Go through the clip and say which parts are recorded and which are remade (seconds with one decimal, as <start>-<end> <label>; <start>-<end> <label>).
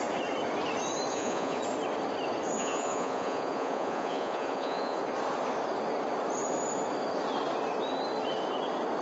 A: 0.0-1.1 recorded; 1.1-1.6 remade; 1.6-2.6 recorded; 2.6-5.0 remade; 5.0-9.0 recorded